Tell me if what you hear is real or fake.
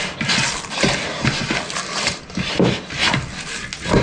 real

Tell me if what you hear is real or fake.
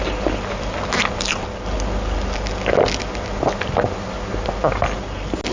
real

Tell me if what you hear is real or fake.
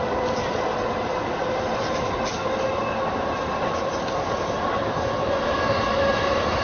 real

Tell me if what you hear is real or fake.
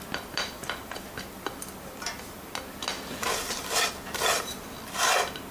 real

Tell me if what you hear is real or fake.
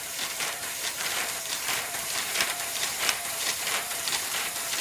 fake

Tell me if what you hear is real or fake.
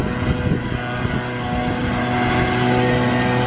real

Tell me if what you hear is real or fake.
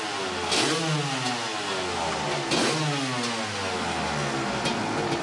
real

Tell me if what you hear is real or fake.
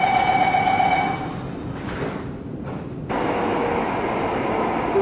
real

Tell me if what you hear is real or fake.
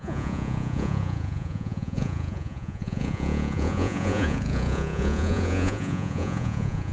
fake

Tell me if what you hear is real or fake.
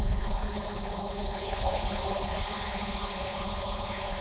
fake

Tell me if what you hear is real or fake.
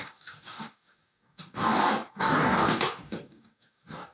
fake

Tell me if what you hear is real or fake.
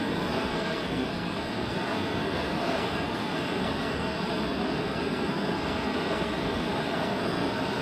fake